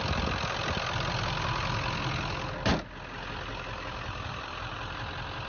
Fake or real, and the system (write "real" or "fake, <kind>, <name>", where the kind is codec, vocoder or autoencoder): real